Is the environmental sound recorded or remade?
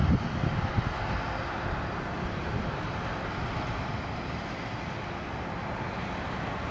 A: recorded